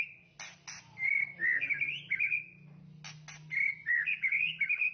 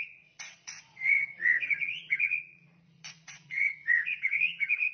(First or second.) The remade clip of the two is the second